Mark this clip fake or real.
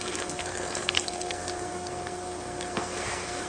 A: fake